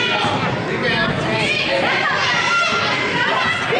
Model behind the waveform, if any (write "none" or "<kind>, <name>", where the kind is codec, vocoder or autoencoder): none